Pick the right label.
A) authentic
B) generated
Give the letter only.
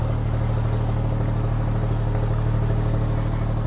A